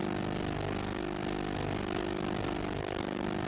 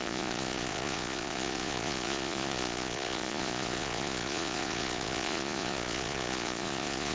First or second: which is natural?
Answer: first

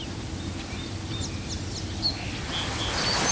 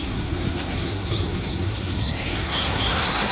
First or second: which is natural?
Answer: first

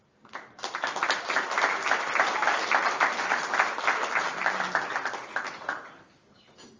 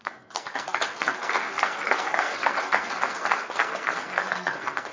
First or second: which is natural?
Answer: first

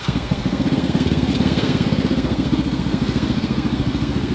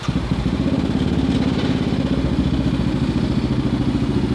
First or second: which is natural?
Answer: second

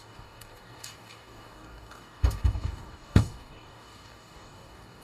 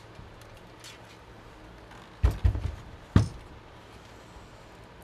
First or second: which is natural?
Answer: second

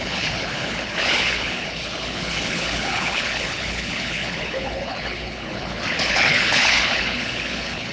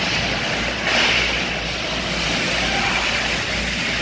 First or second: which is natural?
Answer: second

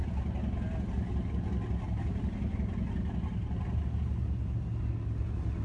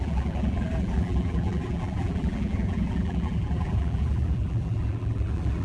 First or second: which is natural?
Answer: first